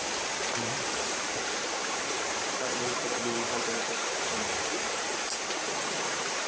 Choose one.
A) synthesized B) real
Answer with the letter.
A